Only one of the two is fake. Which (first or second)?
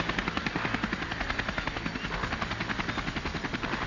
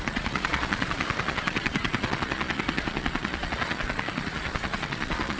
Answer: second